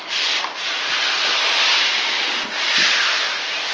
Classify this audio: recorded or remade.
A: recorded